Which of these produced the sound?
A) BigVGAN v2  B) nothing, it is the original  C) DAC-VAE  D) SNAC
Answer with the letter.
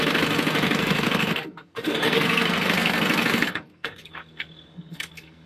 D